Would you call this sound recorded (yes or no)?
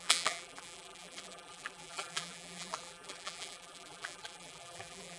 no